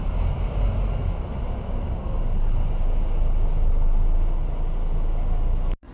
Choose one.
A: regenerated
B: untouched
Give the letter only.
B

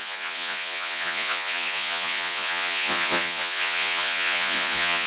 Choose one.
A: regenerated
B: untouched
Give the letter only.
A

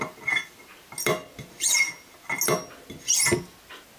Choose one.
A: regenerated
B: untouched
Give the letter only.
B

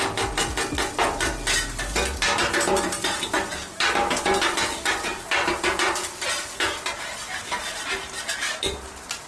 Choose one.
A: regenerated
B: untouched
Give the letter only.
B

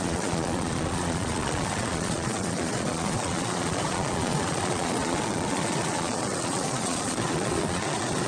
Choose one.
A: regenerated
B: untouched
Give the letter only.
A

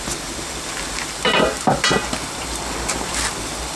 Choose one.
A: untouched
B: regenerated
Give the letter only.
A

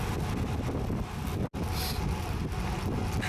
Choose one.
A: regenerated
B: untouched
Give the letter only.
B